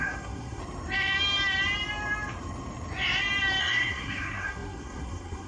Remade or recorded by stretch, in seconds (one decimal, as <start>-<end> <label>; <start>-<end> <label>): 0.0-0.6 remade; 0.6-3.6 recorded; 3.6-5.5 remade